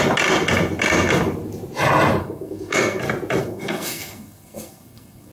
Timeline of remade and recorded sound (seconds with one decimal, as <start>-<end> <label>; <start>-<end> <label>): 0.0-2.2 recorded; 2.2-3.0 remade; 3.0-3.4 recorded; 3.4-5.3 remade